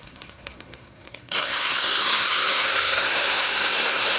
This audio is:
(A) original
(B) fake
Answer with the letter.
B